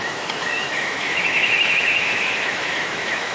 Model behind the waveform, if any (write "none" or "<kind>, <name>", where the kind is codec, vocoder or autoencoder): autoencoder, DAC-VAE